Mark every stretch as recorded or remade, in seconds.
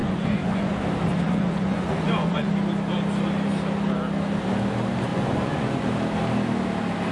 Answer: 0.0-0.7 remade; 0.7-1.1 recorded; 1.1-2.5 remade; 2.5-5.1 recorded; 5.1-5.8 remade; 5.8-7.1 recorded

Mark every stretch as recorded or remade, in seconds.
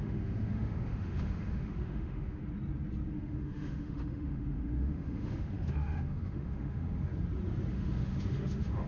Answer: 0.0-2.4 remade; 2.4-3.1 recorded; 3.1-7.1 remade; 7.1-7.7 recorded; 7.7-8.9 remade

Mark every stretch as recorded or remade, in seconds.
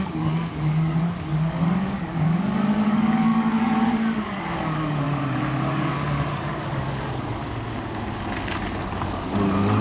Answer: 0.0-7.4 remade; 7.4-8.9 recorded; 8.9-9.8 remade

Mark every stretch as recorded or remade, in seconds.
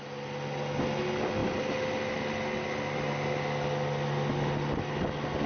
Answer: 0.0-5.5 recorded